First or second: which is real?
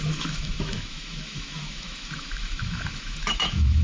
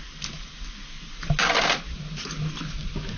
second